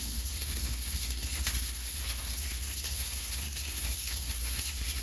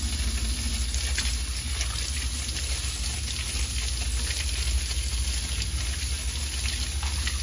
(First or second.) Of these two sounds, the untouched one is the second